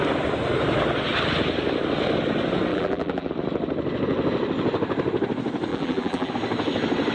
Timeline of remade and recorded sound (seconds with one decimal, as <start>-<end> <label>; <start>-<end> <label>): 0.0-2.7 recorded; 2.7-3.3 remade; 3.3-5.7 recorded; 5.7-6.3 remade; 6.3-7.1 recorded